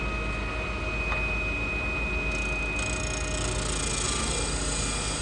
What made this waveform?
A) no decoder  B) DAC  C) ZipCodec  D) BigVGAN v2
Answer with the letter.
A